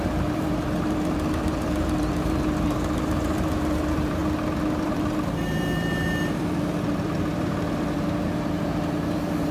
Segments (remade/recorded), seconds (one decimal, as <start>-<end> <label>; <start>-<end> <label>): 0.0-4.2 remade; 4.2-4.8 recorded; 4.8-9.5 remade

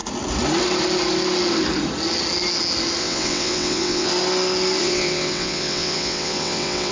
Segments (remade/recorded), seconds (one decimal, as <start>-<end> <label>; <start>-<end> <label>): 0.0-3.0 recorded; 3.0-4.1 remade; 4.1-4.8 recorded; 4.8-6.9 remade

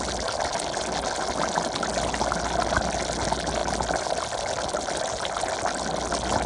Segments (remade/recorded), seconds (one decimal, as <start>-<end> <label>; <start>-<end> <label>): 0.0-6.5 recorded